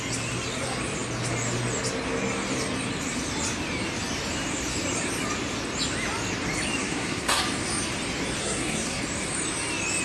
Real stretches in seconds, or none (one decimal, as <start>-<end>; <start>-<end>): 0.0-6.8; 7.4-8.4; 9.0-10.0